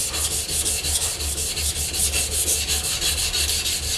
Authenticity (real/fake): real